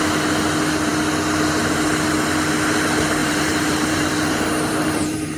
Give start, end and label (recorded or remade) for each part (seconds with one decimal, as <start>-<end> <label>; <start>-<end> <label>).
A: 0.0-3.2 recorded; 3.2-5.4 remade